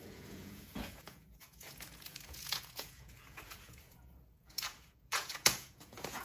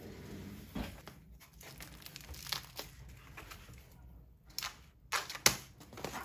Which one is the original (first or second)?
second